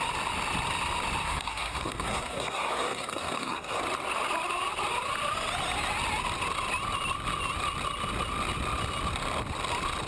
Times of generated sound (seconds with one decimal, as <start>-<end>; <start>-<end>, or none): 1.2-3.8